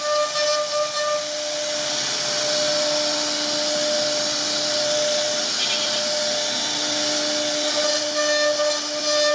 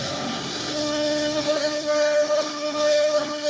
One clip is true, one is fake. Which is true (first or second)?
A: first